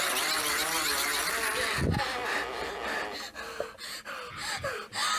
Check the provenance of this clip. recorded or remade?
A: recorded